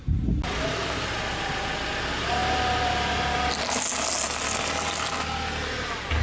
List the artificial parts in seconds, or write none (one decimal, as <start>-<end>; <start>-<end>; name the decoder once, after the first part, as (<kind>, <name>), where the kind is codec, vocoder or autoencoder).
none